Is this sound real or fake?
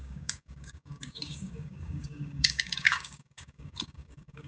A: fake